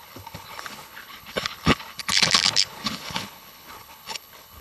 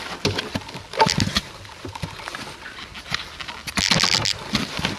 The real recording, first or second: second